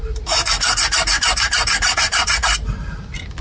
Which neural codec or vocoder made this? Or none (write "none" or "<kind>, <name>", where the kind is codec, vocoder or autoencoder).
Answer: none